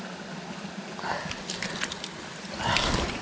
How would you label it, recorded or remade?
recorded